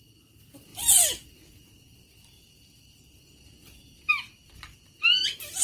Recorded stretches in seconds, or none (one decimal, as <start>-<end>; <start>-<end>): 0.0-5.6